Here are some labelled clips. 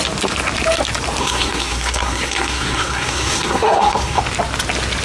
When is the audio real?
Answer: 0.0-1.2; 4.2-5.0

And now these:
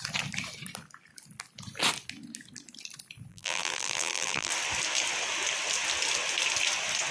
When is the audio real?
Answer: 0.0-3.3; 4.5-7.1

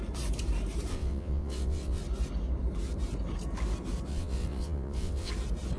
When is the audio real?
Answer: 0.0-0.9; 2.0-4.1; 5.3-5.8

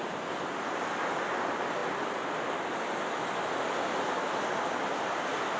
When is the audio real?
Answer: 0.0-5.6

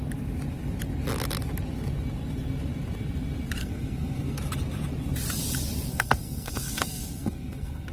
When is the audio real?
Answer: 0.0-3.6; 4.4-5.9

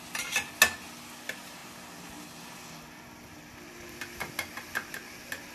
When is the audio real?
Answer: 0.0-5.5

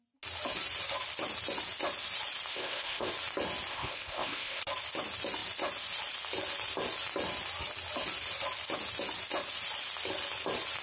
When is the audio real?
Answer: 0.0-2.5; 3.1-3.7; 4.6-10.8

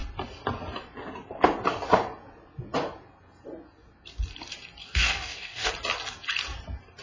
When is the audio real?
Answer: 0.0-4.8; 5.7-7.0